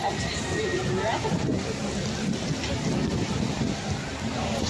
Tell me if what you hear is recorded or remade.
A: recorded